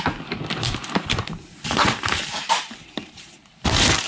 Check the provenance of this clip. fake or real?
real